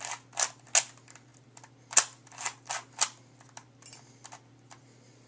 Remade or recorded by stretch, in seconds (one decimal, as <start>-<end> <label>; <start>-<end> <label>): 0.0-5.3 recorded